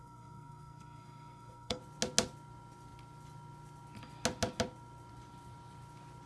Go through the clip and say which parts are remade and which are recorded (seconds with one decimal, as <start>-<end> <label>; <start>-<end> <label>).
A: 0.0-1.8 remade; 1.8-6.3 recorded